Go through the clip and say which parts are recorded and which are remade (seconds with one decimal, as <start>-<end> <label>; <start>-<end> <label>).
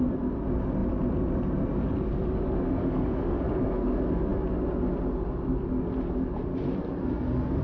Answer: 0.0-2.8 recorded; 2.8-3.4 remade; 3.4-7.6 recorded